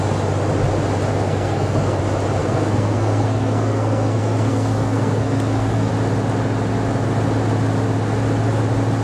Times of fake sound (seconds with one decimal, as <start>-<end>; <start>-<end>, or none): 1.1-2.0; 2.4-5.9

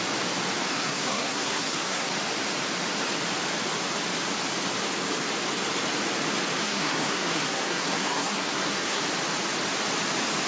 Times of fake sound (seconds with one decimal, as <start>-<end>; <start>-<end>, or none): 0.7-2.1; 6.6-9.0